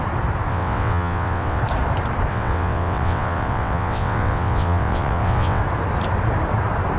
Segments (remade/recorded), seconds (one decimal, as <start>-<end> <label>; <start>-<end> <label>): 0.0-0.5 recorded; 0.5-1.6 remade; 1.6-2.3 recorded; 2.3-5.6 remade; 5.6-7.0 recorded